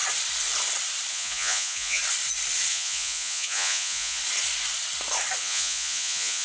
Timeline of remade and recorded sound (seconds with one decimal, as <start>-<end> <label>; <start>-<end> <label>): 0.0-1.1 recorded; 1.1-2.0 remade; 2.0-2.7 recorded; 2.7-4.2 remade; 4.2-5.4 recorded; 5.4-6.4 remade